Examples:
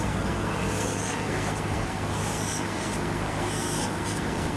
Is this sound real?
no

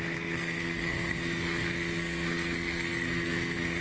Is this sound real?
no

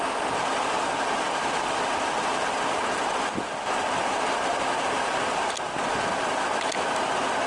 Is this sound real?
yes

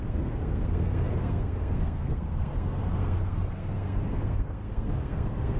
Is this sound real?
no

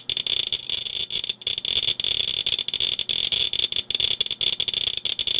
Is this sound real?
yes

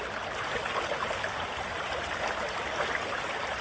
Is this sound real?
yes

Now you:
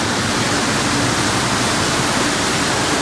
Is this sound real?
yes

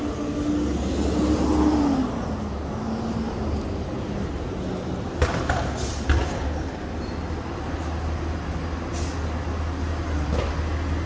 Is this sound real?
yes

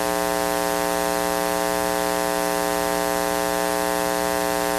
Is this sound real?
yes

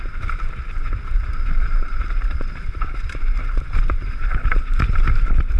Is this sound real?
no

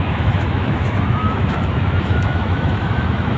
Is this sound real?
no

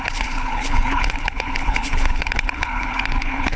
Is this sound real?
no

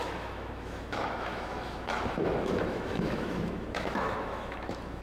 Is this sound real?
no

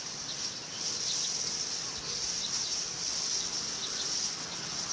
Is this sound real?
yes